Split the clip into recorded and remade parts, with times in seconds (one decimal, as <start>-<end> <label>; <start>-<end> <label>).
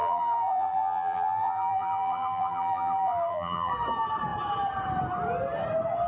0.0-3.7 remade; 3.7-6.1 recorded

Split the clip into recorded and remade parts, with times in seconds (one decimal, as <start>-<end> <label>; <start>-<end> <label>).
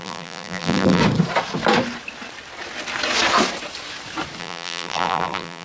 0.0-1.0 remade; 1.0-4.4 recorded; 4.4-5.6 remade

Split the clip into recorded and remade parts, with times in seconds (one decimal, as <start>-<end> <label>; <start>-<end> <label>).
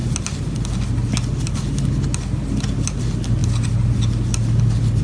0.0-5.0 recorded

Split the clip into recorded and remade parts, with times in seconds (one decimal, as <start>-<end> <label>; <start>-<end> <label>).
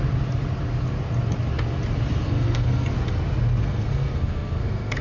0.0-2.2 recorded; 2.2-2.9 remade; 2.9-3.6 recorded; 3.6-5.0 remade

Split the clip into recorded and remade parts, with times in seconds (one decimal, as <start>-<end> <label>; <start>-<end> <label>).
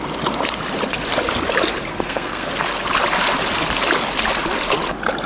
0.0-1.9 recorded; 1.9-2.5 remade; 2.5-5.3 recorded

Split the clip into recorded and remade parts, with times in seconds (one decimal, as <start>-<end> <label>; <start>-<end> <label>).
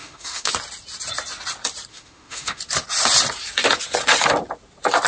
0.0-0.5 remade; 0.5-1.9 recorded; 1.9-2.6 remade; 2.6-5.1 recorded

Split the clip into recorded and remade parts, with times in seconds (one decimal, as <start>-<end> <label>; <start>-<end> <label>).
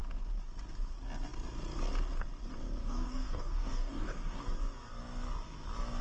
0.0-2.8 recorded; 2.8-4.4 remade; 4.4-6.0 recorded